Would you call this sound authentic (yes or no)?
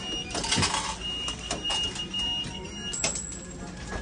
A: yes